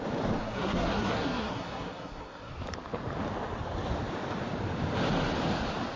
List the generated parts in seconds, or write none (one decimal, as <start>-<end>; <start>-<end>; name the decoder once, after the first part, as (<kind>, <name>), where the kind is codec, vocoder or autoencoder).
0.4-2.5 (codec, SNAC)